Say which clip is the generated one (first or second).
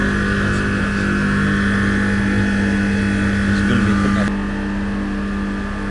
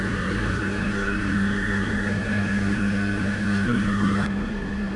second